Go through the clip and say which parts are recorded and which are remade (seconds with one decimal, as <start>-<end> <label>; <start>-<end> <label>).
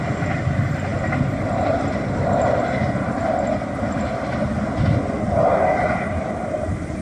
0.0-7.0 recorded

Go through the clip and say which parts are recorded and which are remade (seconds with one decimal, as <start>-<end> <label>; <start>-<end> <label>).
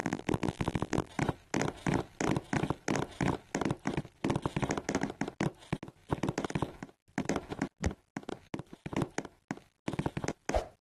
0.0-1.1 remade; 1.1-11.0 recorded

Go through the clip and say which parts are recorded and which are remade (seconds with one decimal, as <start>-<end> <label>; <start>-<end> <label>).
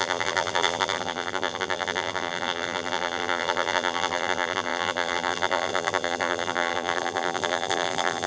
0.0-8.3 remade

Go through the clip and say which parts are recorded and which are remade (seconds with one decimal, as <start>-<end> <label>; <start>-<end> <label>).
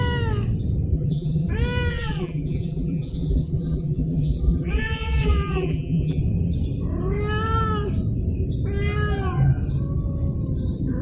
0.0-0.9 recorded; 0.9-1.5 remade; 1.5-1.9 recorded; 1.9-6.2 remade; 6.2-11.0 recorded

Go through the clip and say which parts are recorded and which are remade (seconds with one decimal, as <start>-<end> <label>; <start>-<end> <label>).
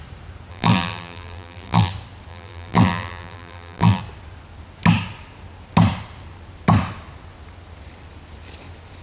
0.0-0.5 recorded; 0.5-1.9 remade; 1.9-2.3 recorded; 2.3-4.0 remade; 4.0-9.0 recorded